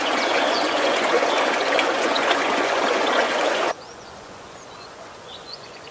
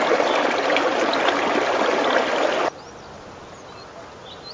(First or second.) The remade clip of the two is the first